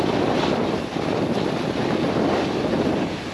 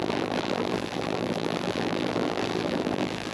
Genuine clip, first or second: first